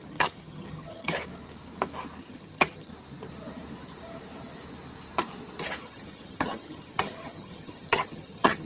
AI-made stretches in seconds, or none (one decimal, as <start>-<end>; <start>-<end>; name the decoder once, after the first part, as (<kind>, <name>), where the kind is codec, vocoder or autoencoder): 0.0-1.1 (vocoder, HiFi-GAN); 2.2-2.9; 5.8-8.7

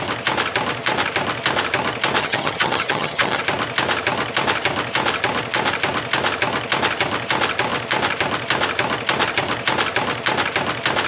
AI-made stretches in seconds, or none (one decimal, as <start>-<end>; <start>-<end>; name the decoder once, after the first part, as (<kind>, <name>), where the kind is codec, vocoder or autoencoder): 2.2-3.4 (vocoder, HiFi-GAN)

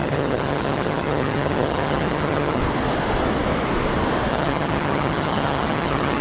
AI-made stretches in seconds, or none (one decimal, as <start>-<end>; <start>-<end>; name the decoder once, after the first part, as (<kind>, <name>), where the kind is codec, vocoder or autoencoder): 0.0-2.6 (vocoder, HiFi-GAN); 4.3-6.2

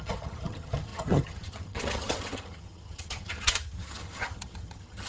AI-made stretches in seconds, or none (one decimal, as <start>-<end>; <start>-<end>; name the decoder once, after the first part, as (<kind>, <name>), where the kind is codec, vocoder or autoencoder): 0.0-5.1 (vocoder, HiFi-GAN)